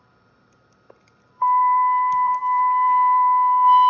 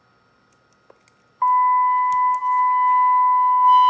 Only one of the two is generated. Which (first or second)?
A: first